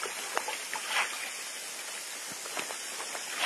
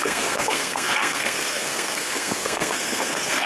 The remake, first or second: second